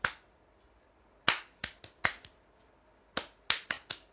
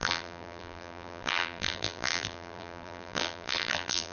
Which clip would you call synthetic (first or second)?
second